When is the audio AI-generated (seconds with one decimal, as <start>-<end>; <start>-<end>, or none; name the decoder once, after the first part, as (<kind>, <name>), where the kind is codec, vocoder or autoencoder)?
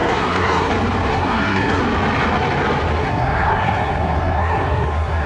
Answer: 0.0-0.7 (codec, SNAC); 1.1-1.8; 2.9-5.3